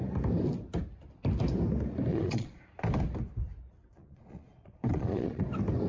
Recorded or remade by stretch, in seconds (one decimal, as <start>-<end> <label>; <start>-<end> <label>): 0.0-2.1 recorded; 2.1-2.6 remade; 2.6-3.9 recorded; 3.9-5.4 remade; 5.4-5.9 recorded